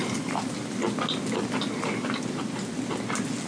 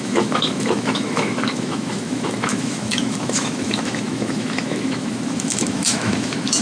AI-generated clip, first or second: second